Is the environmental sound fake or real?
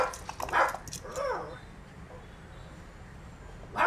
real